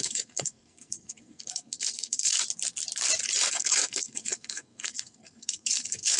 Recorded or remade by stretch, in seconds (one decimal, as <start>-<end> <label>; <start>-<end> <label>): 0.0-2.3 remade; 2.3-3.5 recorded; 3.5-6.2 remade